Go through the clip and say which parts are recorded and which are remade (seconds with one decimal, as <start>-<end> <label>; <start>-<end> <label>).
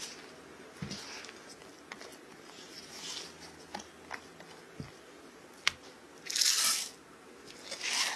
0.0-8.2 recorded